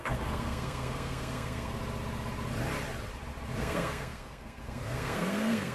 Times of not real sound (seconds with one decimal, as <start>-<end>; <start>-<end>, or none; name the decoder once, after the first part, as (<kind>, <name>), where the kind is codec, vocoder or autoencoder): 0.0-1.8 (codec, SNAC); 3.6-5.7